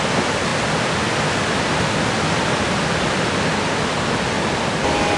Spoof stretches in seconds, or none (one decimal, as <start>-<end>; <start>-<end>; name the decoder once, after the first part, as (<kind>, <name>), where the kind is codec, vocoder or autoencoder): none